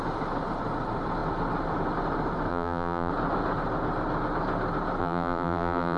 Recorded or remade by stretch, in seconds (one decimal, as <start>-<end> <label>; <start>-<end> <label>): 0.0-2.5 recorded; 2.5-3.1 remade; 3.1-5.0 recorded; 5.0-6.0 remade